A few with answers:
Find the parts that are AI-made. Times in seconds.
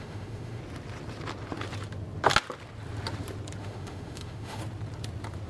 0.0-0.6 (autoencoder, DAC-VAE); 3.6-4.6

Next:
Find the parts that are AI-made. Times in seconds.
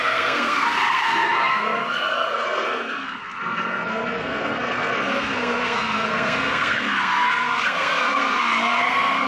0.0-9.3 (codec, SNAC)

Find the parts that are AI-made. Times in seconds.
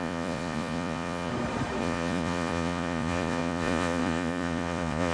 0.0-1.3 (vocoder, Vocos); 1.8-5.1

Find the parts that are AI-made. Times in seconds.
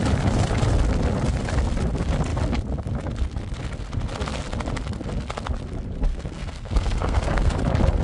6.1-7.5 (codec, SNAC)